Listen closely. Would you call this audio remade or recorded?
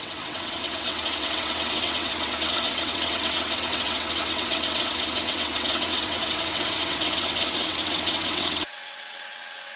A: remade